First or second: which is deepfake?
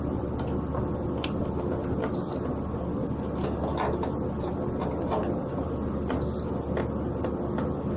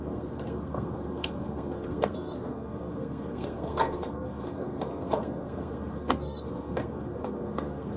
second